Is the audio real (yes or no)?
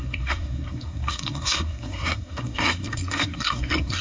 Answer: no